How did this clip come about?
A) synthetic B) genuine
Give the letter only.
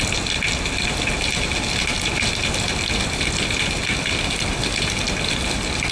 B